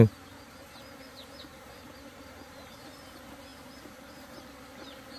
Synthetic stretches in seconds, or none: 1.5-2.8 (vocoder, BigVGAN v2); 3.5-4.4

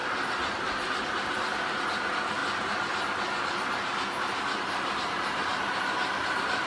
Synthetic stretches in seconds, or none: none